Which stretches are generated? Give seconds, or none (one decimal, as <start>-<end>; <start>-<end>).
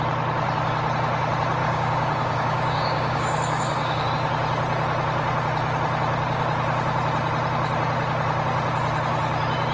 1.6-4.1